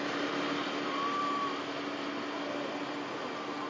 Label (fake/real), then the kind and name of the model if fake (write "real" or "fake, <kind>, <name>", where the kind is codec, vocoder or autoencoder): real